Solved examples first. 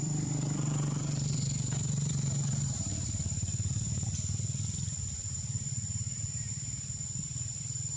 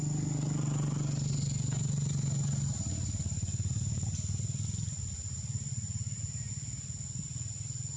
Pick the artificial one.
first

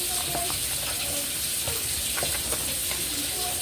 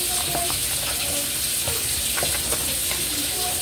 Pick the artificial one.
first